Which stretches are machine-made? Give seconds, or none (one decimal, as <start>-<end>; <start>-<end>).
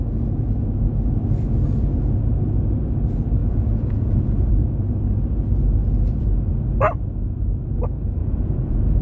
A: 3.4-4.5; 8.2-9.0